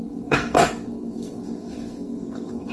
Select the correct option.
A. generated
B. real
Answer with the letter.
A